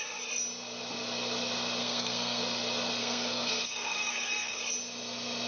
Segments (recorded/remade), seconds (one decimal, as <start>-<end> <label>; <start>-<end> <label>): 0.0-1.8 recorded; 1.8-2.4 remade; 2.4-3.0 recorded; 3.0-4.6 remade; 4.6-5.5 recorded